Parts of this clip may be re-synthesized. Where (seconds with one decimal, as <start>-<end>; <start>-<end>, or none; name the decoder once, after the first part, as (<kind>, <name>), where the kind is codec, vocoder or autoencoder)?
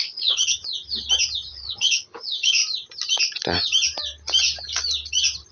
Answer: 0.0-0.6 (codec, HILCodec); 1.5-2.6